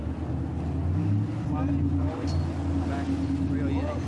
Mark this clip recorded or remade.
recorded